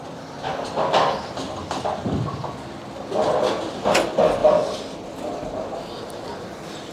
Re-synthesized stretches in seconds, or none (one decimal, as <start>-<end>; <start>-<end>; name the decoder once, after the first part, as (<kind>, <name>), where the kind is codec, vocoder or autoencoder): none